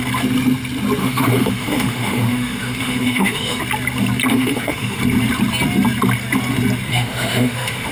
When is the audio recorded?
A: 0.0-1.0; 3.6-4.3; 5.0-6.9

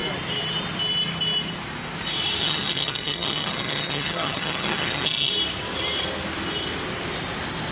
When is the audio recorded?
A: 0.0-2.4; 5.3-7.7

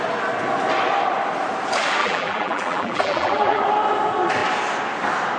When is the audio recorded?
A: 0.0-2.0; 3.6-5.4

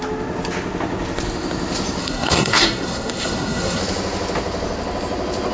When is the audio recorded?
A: 0.0-2.0; 3.8-5.5

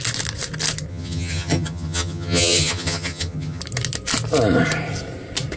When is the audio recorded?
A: 0.0-0.9; 3.6-5.6

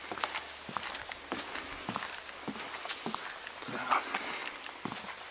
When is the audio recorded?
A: 0.0-5.3